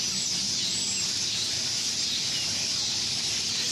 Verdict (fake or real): real